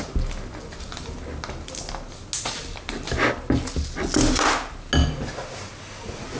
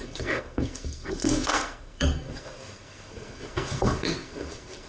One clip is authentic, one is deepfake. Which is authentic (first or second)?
first